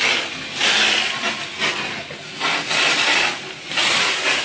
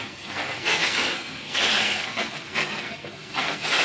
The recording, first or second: first